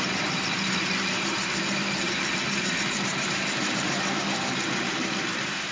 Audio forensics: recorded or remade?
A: remade